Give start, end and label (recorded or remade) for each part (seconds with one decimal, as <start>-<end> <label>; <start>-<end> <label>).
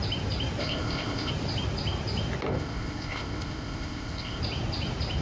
0.0-0.6 recorded; 0.6-1.3 remade; 1.3-2.5 recorded; 2.5-4.4 remade; 4.4-5.2 recorded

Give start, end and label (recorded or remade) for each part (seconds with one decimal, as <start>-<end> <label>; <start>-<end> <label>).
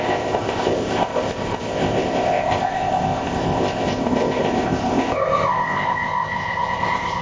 0.0-7.2 remade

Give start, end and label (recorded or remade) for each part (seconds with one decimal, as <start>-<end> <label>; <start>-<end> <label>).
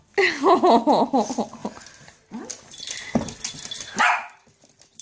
0.0-5.0 recorded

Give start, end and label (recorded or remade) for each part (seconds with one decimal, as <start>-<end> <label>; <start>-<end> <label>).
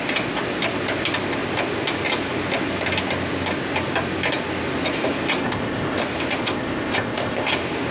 0.0-5.4 recorded; 5.4-6.0 remade; 6.0-6.4 recorded; 6.4-7.5 remade; 7.5-7.9 recorded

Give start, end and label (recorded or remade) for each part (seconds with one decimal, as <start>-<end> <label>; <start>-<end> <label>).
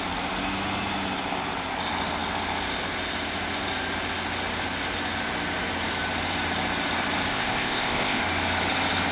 0.0-7.3 recorded; 7.3-8.2 remade; 8.2-9.1 recorded